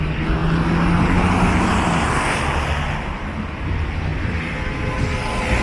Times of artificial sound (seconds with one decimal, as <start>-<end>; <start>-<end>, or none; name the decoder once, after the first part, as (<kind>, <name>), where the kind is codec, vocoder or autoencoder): none